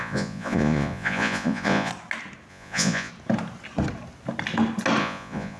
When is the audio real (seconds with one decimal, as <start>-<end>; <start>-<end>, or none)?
1.9-2.5; 3.1-5.0